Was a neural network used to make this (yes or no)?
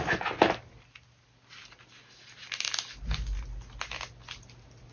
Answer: no